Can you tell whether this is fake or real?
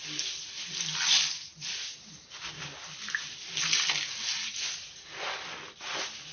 real